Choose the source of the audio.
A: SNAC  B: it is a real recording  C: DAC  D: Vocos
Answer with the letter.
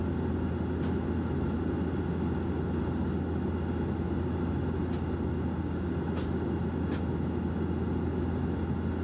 B